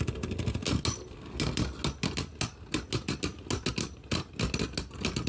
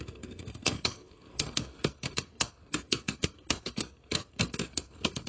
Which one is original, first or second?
first